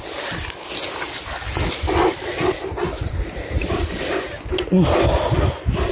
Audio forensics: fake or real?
real